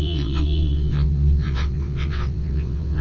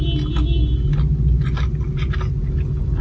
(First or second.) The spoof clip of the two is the first